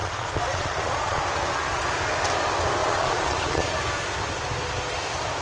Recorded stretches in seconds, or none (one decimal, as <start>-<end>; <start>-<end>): 1.2-2.8; 3.6-5.4